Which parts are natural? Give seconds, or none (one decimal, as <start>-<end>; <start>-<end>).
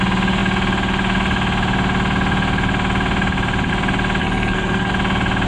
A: 0.0-4.2; 4.9-5.5